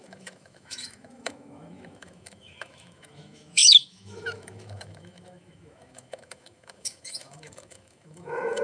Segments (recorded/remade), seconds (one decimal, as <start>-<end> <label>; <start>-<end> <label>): 0.0-8.6 remade